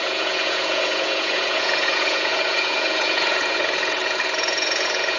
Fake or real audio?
fake